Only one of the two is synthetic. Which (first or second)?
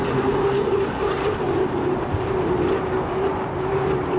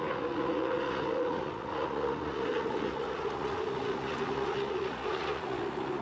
second